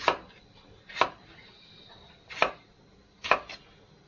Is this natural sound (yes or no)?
yes